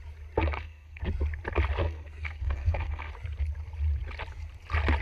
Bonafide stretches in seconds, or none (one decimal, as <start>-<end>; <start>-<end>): 0.0-0.4; 1.0-1.8; 3.1-5.0